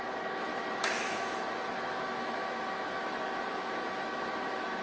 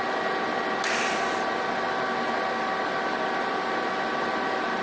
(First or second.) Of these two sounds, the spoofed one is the first